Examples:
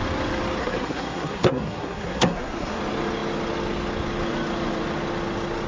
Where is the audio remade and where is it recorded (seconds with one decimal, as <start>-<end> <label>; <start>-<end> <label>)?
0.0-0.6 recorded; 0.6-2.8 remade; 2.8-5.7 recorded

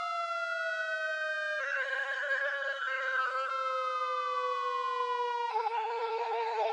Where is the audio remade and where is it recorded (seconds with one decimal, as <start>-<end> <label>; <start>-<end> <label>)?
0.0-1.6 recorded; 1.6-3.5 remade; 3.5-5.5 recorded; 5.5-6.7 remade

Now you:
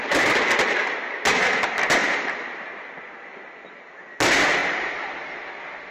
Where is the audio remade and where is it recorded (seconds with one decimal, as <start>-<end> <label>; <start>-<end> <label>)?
0.0-5.9 recorded